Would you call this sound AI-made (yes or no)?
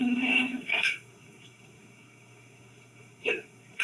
yes